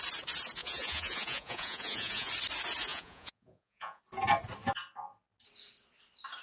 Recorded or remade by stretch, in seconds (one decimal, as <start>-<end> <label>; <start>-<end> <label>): 0.0-0.6 recorded; 0.6-2.3 remade; 2.3-2.9 recorded; 2.9-4.0 remade; 4.0-6.4 recorded